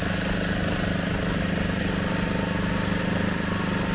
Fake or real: real